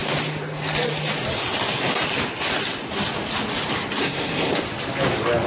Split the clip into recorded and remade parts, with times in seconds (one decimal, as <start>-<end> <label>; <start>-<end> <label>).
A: 0.0-4.0 recorded; 4.0-4.5 remade; 4.5-5.5 recorded